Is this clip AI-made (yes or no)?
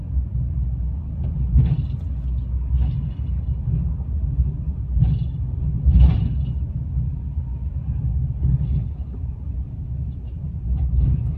no